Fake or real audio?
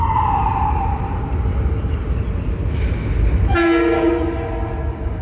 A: real